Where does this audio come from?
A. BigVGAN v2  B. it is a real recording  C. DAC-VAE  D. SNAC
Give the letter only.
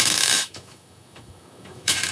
C